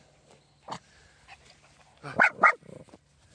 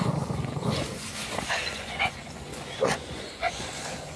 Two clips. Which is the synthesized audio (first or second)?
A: second